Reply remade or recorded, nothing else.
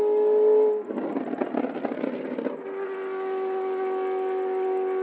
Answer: recorded